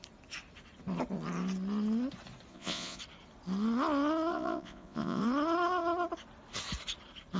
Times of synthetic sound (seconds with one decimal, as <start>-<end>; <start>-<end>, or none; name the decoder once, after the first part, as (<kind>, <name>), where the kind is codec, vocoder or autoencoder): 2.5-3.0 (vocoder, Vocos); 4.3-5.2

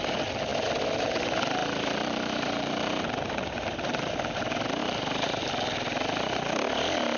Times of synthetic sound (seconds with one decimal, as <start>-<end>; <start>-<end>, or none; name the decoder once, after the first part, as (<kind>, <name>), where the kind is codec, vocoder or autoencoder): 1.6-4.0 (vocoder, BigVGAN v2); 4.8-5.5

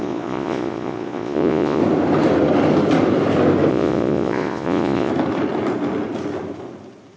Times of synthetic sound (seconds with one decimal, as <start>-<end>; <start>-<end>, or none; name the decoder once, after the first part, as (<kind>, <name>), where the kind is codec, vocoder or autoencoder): 0.0-1.8 (vocoder, Vocos); 3.7-5.1

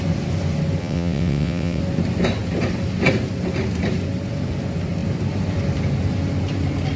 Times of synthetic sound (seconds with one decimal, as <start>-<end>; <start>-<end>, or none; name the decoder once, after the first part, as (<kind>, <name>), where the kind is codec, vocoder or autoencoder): 0.8-1.8 (vocoder, WaveNeXt)

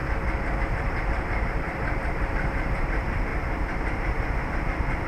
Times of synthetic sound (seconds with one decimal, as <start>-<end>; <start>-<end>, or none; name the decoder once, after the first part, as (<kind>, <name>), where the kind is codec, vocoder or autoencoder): 0.6-3.3 (vocoder, BigVGAN v2); 4.4-5.1